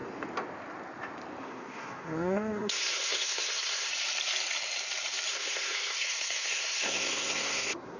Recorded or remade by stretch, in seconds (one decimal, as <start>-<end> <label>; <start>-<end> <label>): 0.0-1.4 recorded; 1.4-3.9 remade; 3.9-5.3 recorded; 5.3-8.0 remade